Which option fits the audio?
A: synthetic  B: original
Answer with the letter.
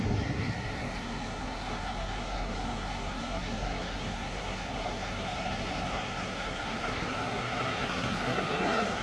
A